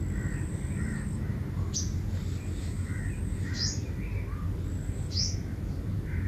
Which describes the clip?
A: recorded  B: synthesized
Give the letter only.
A